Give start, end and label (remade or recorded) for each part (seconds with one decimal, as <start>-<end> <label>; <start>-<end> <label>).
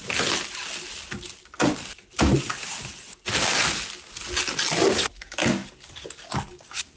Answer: 0.0-5.1 recorded; 5.1-7.0 remade